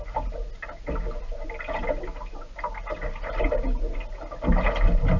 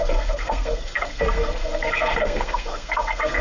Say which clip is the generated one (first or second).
second